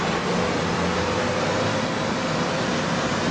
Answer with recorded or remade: recorded